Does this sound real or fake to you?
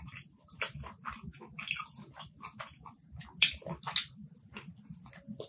real